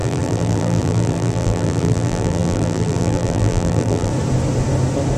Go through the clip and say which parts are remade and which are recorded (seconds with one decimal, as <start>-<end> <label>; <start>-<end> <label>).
0.0-4.1 remade; 4.1-5.2 recorded